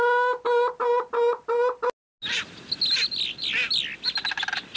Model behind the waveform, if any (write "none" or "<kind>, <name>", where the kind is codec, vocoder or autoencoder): none